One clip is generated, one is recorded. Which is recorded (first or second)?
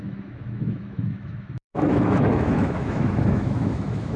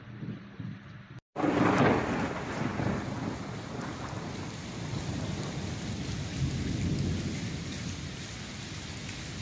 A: second